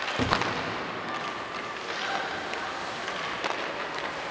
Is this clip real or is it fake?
real